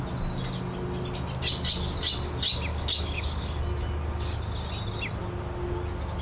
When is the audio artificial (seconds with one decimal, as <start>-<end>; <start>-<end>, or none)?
2.7-3.6